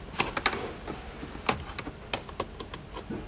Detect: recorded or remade recorded